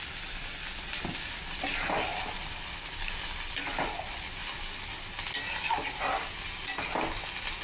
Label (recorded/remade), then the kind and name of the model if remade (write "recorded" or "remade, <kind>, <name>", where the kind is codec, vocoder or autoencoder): recorded